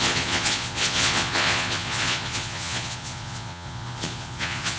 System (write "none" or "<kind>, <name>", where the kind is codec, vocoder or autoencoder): vocoder, Vocos